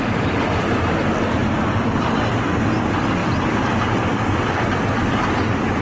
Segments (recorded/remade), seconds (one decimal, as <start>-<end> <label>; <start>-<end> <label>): 0.0-5.8 recorded